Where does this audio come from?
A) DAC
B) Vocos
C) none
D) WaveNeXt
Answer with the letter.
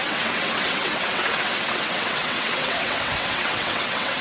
D